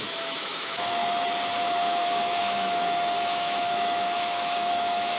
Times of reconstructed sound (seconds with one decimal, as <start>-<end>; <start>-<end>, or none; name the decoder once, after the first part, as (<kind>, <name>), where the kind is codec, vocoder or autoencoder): 0.0-1.0 (autoencoder, DAC-VAE); 1.6-5.2